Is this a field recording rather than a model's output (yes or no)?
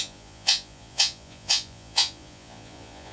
no